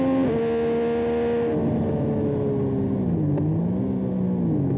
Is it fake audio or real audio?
real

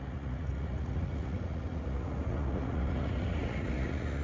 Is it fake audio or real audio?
fake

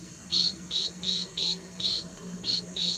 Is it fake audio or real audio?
fake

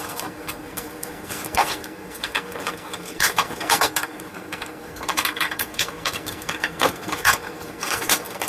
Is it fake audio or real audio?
fake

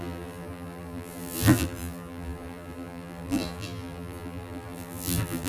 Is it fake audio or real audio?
fake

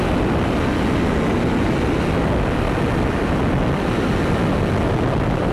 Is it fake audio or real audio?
real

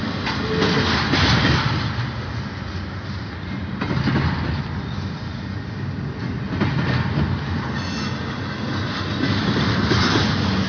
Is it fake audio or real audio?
real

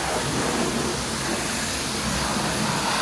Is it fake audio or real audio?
real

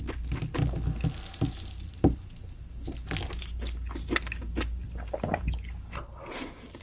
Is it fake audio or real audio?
real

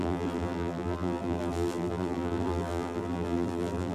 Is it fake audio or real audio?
fake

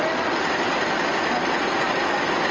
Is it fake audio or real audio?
real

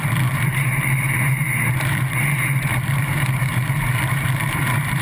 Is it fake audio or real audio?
fake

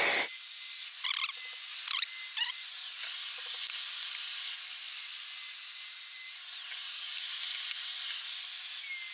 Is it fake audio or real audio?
real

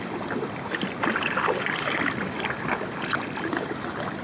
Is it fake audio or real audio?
real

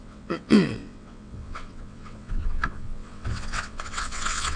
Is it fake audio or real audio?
fake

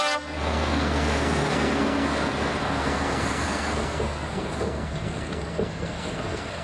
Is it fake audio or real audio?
fake